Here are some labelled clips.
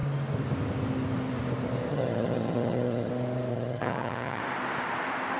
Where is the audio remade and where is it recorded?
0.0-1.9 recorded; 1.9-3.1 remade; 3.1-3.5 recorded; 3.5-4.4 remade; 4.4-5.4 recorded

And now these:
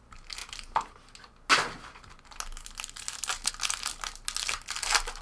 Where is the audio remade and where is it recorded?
0.0-5.2 recorded

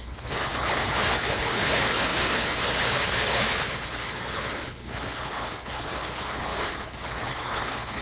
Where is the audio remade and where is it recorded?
0.0-8.0 remade

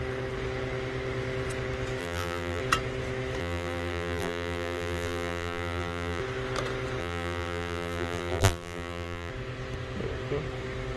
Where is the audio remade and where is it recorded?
0.0-2.0 recorded; 2.0-2.6 remade; 2.6-3.4 recorded; 3.4-6.2 remade; 6.2-7.0 recorded; 7.0-9.3 remade; 9.3-11.0 recorded

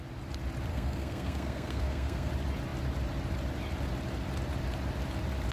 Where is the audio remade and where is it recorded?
0.0-0.7 recorded; 0.7-2.3 remade; 2.3-5.5 recorded

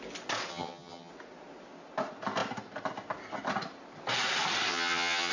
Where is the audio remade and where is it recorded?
0.0-0.5 recorded; 0.5-1.1 remade; 1.1-4.7 recorded; 4.7-5.3 remade